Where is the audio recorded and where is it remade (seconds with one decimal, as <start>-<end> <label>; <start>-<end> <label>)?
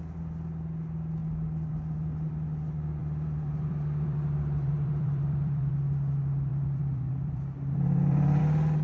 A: 0.0-3.0 recorded; 3.0-5.7 remade; 5.7-6.5 recorded; 6.5-8.4 remade; 8.4-8.8 recorded